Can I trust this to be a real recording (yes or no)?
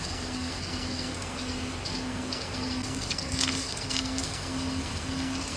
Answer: no